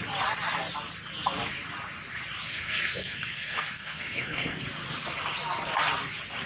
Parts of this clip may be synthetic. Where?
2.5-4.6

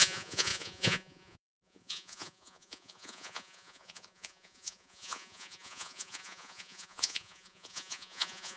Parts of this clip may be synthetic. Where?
0.0-8.6

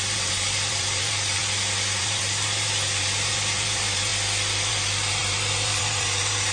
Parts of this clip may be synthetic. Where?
0.0-1.4; 2.0-4.1; 4.7-6.5

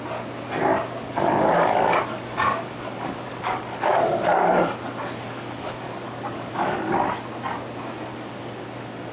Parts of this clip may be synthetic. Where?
1.0-4.6; 5.2-6.9; 8.1-9.1

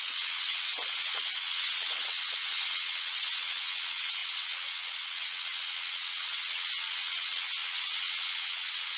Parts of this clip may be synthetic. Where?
0.0-9.0

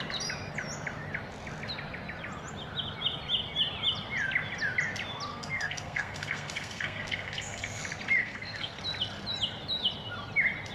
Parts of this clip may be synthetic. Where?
5.3-7.8; 8.2-8.8

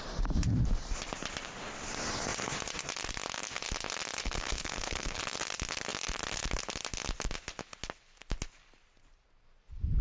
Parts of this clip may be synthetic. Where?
4.2-5.2